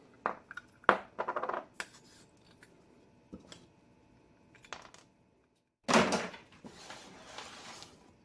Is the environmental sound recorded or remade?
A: recorded